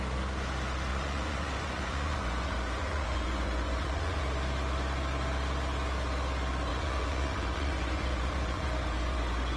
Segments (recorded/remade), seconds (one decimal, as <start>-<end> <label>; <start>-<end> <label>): 0.0-0.9 recorded; 0.9-4.2 remade; 4.2-6.7 recorded; 6.7-9.6 remade